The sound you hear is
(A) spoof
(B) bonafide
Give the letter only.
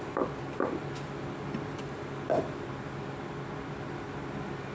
B